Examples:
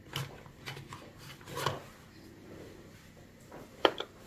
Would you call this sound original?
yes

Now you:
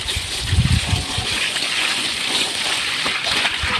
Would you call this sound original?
no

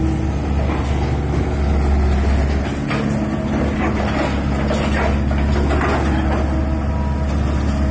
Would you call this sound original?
yes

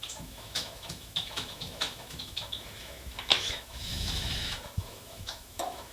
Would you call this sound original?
no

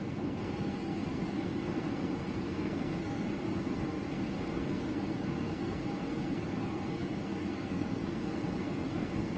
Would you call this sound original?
no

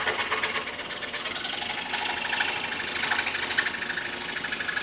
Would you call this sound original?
yes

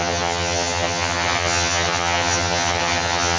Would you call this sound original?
no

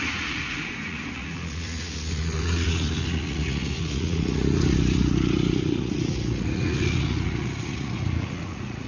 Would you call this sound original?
no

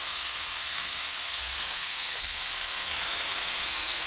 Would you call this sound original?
no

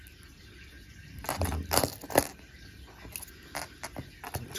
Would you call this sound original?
yes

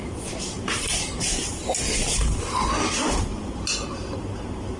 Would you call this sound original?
no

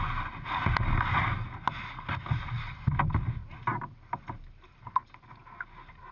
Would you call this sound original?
yes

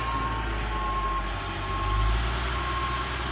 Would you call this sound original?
yes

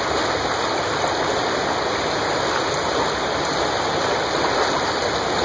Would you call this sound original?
yes